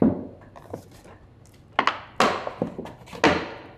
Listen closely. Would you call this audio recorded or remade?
recorded